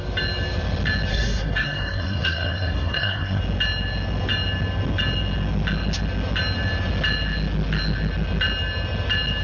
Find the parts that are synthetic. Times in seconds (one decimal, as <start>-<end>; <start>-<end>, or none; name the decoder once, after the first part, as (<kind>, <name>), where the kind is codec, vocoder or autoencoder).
1.1-3.4 (codec, SNAC)